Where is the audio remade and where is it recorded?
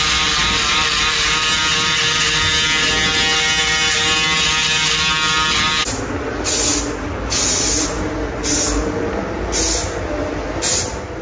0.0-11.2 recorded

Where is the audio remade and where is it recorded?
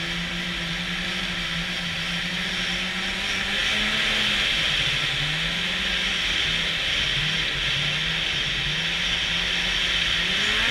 0.0-10.7 recorded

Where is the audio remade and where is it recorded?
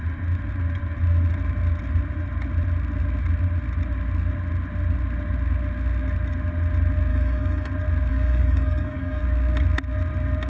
0.0-7.1 recorded; 7.1-7.7 remade; 7.7-8.1 recorded; 8.1-9.2 remade; 9.2-10.5 recorded